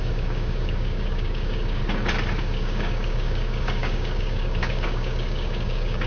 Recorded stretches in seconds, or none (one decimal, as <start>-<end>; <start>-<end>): 1.8-2.4